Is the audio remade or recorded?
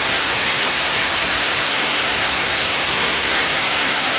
remade